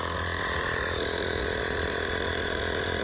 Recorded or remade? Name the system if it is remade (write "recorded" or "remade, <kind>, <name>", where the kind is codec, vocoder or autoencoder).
remade, vocoder, Vocos